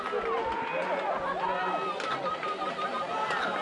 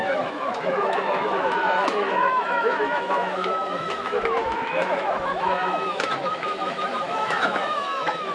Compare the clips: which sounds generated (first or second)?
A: second